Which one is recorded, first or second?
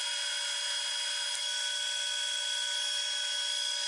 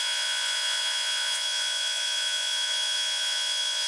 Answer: first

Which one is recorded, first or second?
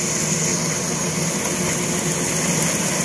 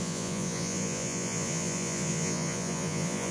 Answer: first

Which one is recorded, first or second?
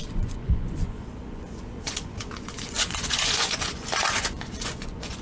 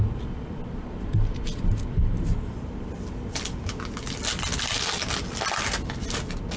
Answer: second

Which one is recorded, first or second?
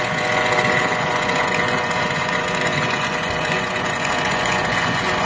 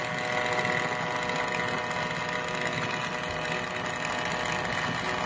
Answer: second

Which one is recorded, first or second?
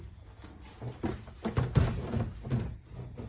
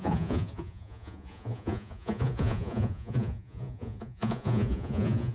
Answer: first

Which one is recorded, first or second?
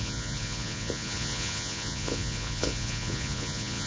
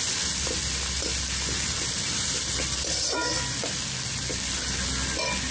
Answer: second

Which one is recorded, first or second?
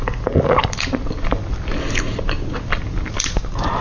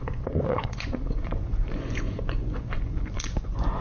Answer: first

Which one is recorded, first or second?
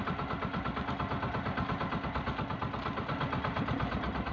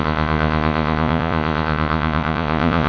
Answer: first